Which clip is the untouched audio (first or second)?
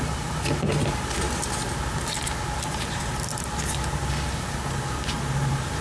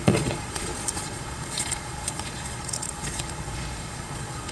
first